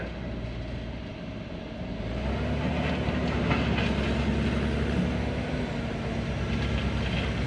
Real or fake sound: real